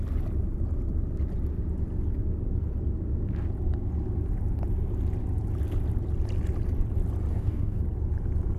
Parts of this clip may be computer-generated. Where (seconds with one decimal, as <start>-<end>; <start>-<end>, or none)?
7.3-7.8